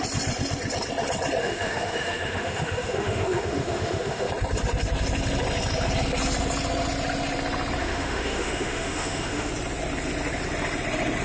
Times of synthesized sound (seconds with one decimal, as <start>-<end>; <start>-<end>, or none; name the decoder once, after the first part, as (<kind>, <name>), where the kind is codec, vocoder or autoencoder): 1.4-4.3 (autoencoder, DAC-VAE); 7.8-9.5